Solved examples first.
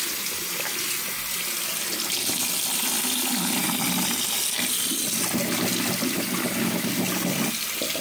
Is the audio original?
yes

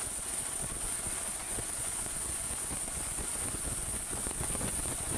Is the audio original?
no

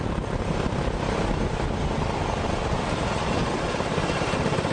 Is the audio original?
yes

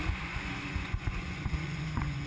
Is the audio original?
no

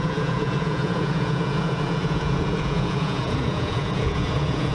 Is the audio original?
no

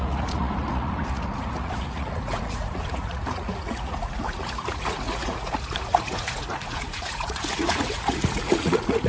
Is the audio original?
no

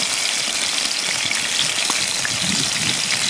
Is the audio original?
yes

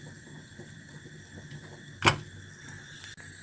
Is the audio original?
yes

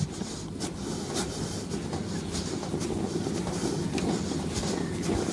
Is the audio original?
yes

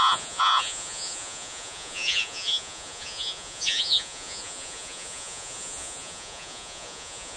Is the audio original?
no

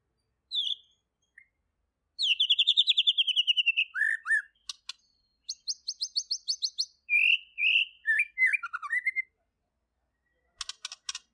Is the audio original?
yes